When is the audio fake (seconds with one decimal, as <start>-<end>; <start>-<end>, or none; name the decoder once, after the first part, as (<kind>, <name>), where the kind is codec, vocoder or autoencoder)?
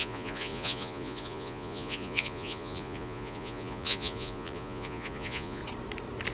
0.0-5.6 (vocoder, Vocos)